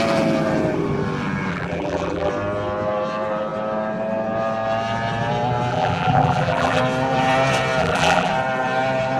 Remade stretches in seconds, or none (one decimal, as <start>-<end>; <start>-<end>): 1.5-2.3; 5.7-6.8; 7.8-8.3